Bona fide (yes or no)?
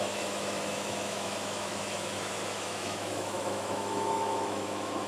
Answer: no